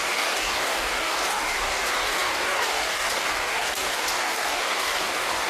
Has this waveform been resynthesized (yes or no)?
yes